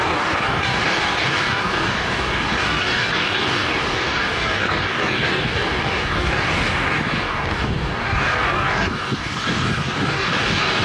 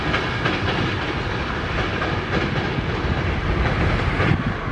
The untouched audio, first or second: second